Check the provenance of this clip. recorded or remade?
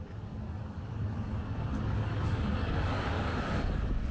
remade